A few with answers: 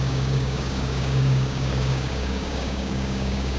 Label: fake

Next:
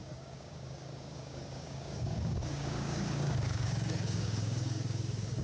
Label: fake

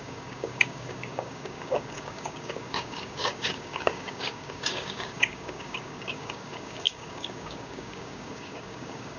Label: fake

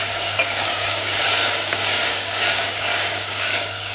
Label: fake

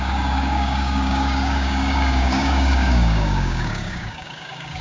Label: fake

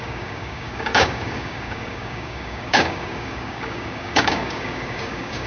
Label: fake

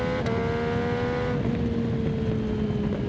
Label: real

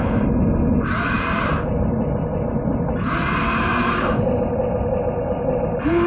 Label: real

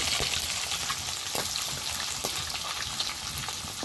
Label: real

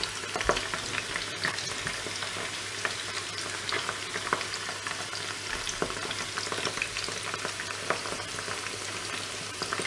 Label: real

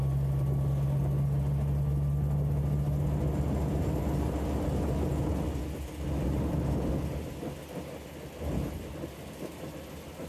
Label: real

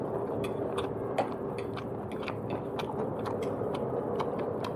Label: real